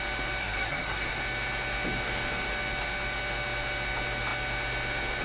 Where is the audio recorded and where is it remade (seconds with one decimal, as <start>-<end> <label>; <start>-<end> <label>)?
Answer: 0.0-0.4 recorded; 0.4-1.2 remade; 1.2-5.2 recorded